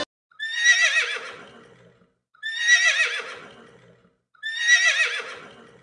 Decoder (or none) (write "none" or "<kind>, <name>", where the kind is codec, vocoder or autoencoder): none